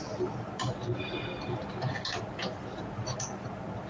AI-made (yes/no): no